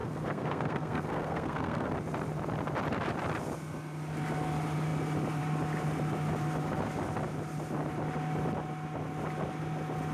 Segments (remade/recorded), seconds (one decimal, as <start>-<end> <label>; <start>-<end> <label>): 0.0-1.9 remade; 1.9-10.1 recorded